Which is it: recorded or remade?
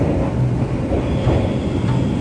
recorded